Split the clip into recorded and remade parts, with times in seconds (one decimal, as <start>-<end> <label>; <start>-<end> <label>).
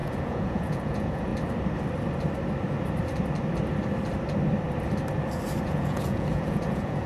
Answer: 0.0-1.3 remade; 1.3-5.6 recorded; 5.6-7.1 remade